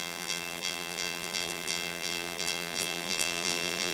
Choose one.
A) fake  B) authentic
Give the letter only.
A